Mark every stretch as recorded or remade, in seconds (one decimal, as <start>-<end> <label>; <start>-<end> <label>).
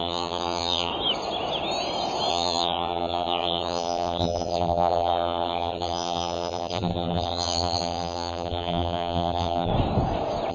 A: 0.0-0.9 remade; 0.9-2.3 recorded; 2.3-9.7 remade; 9.7-10.5 recorded